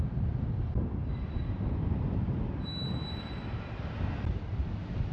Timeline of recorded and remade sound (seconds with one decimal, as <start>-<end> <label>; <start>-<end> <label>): 0.0-5.1 recorded